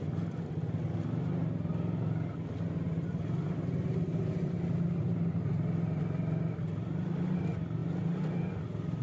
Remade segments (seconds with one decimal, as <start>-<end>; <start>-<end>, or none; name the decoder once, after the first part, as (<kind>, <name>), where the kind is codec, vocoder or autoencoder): none